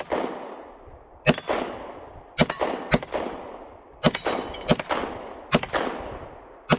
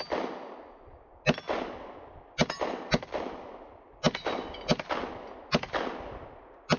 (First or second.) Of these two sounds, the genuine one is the second